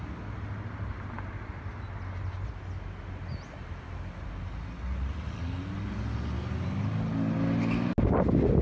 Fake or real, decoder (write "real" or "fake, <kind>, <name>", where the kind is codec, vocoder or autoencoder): real